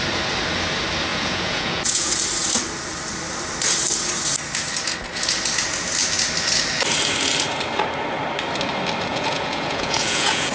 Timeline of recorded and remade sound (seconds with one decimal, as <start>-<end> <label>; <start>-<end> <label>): 0.0-1.1 recorded; 1.1-2.1 remade; 2.1-9.1 recorded; 9.1-10.5 remade